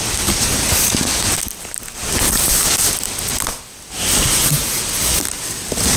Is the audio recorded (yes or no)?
yes